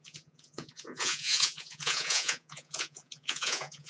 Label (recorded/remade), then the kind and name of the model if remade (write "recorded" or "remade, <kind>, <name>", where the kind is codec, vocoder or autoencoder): remade, vocoder, Vocos